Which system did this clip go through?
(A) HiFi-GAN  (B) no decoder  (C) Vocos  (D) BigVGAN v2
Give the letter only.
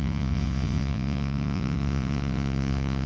C